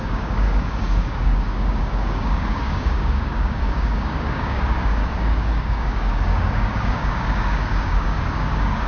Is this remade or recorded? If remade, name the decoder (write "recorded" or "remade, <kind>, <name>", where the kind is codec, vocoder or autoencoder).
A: remade, codec, DAC